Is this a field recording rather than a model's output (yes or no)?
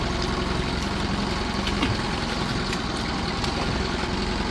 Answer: yes